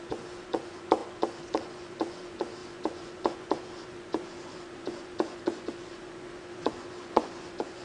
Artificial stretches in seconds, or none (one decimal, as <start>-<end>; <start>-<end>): 0.0-7.8